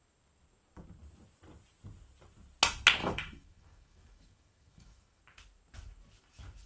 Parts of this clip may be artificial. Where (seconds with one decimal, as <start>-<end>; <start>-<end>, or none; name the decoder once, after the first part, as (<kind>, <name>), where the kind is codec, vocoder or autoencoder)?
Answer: 3.0-5.2 (autoencoder, DAC-VAE)